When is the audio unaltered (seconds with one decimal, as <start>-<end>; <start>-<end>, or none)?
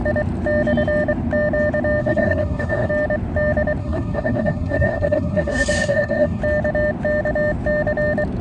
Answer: 0.0-2.0; 2.9-3.8; 6.4-8.4